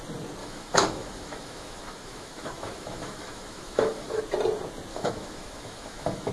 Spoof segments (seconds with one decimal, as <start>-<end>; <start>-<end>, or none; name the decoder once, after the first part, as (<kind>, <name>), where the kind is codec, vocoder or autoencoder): 0.4-4.2 (autoencoder, DAC-VAE); 4.9-6.3